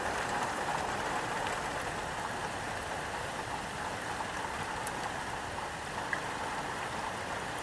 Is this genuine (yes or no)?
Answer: yes